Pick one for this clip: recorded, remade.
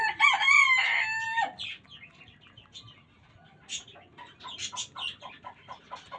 recorded